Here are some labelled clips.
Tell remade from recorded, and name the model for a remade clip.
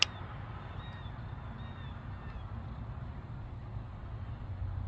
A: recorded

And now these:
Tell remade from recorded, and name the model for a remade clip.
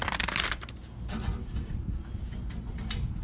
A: recorded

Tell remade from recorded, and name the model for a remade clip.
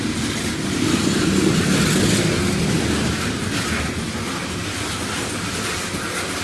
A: recorded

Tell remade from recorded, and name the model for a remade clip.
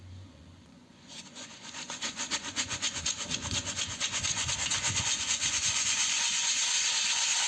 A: remade, vocoder, Vocos